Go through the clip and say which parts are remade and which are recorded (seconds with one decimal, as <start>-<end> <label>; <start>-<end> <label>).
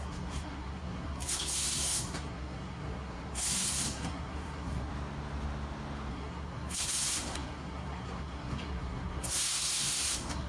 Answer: 0.0-4.9 remade; 4.9-6.1 recorded; 6.1-10.5 remade